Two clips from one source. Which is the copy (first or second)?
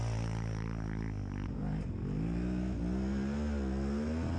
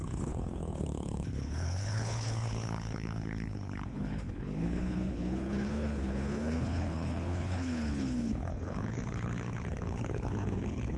second